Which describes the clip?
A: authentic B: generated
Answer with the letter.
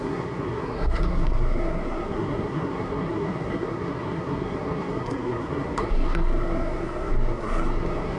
B